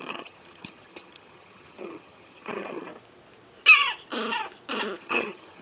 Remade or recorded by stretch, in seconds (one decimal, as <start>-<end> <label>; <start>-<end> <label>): 0.0-2.9 remade; 2.9-5.0 recorded; 5.0-5.6 remade

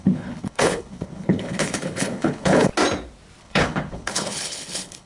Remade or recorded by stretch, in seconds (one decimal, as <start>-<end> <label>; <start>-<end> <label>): 0.0-2.7 remade; 2.7-3.4 recorded; 3.4-5.1 remade

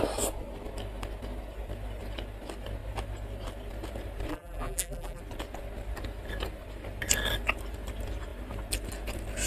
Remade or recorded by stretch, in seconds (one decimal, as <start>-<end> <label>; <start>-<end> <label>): 0.0-4.3 recorded; 4.3-5.2 remade; 5.2-9.5 recorded